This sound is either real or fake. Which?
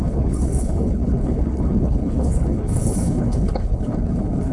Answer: fake